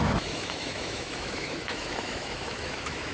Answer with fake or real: fake